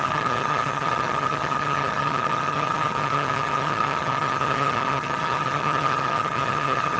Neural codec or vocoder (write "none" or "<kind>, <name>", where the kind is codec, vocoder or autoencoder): vocoder, HiFi-GAN